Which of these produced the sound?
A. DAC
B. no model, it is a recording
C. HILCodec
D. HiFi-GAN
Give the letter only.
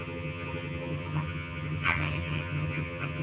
D